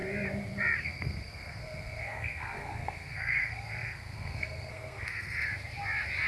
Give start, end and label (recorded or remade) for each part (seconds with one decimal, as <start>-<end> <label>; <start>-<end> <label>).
0.0-0.8 recorded; 0.8-5.5 remade; 5.5-6.3 recorded